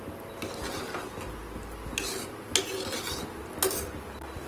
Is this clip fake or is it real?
real